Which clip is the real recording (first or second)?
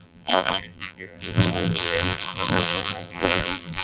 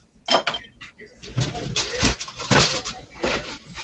second